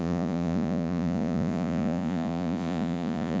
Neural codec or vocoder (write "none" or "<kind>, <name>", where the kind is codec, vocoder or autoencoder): vocoder, Vocos